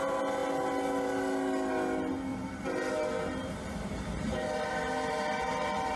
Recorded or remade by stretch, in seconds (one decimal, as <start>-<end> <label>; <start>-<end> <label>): 0.0-2.3 recorded; 2.3-6.0 remade